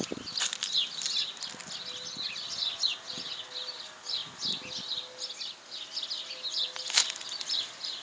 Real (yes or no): yes